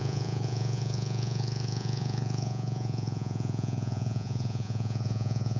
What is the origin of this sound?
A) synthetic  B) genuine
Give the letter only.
A